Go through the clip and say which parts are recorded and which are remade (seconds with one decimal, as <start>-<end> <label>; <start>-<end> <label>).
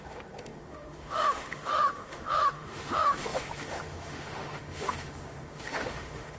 0.0-6.4 remade